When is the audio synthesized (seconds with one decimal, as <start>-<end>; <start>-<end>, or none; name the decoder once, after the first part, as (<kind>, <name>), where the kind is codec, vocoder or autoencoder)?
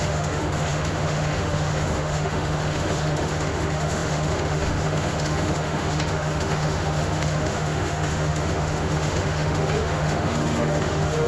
0.0-11.3 (autoencoder, DAC-VAE)